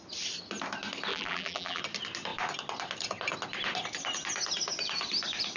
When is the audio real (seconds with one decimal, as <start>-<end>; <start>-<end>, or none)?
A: 0.0-1.1; 1.8-5.6